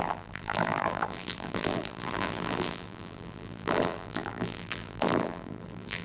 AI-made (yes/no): yes